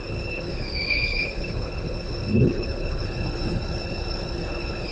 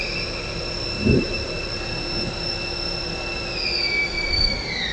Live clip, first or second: second